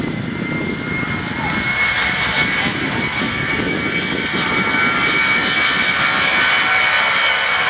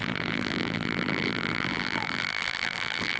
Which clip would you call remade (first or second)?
second